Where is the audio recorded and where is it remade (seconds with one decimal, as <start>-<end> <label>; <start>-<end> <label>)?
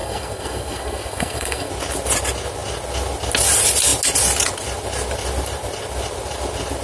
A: 0.0-1.7 remade; 1.7-6.8 recorded